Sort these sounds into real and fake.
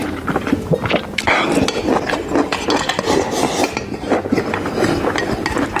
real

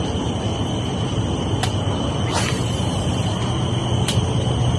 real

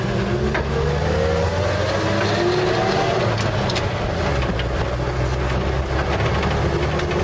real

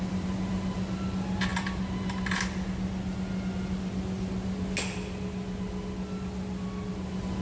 real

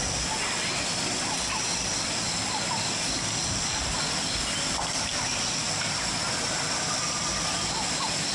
real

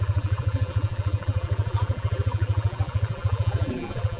fake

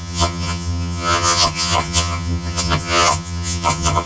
fake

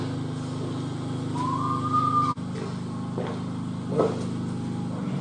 real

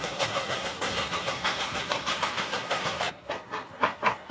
fake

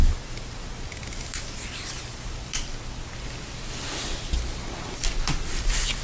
real